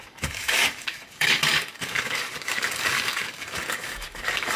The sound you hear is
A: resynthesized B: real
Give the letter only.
A